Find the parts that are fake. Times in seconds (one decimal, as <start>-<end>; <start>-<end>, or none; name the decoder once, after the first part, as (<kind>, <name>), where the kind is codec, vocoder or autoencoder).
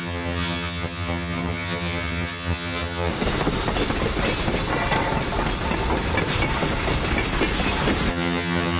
0.0-3.1 (vocoder, HiFi-GAN); 8.1-8.8